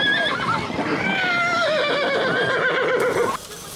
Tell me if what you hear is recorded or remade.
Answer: recorded